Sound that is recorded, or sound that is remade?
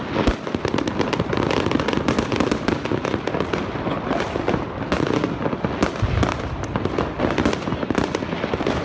recorded